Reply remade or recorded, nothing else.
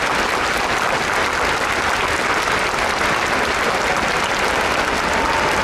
recorded